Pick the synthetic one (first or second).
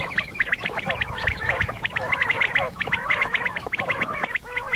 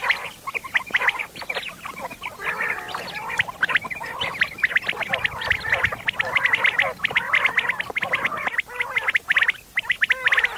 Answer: first